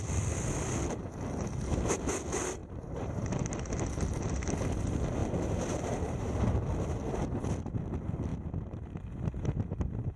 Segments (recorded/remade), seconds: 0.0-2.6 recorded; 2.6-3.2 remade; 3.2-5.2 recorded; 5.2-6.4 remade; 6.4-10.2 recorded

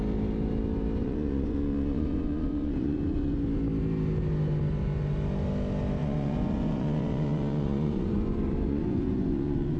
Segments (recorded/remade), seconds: 0.0-1.0 recorded; 1.0-3.3 remade; 3.3-6.0 recorded; 6.0-9.8 remade

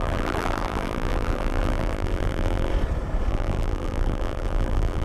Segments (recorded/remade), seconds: 0.0-2.7 remade; 2.7-3.3 recorded; 3.3-5.0 remade